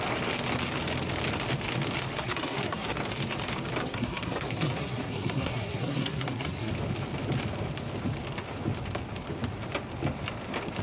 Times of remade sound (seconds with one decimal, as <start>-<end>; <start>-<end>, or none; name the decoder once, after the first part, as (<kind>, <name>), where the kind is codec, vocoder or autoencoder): 2.2-3.0 (codec, SNAC); 3.8-6.7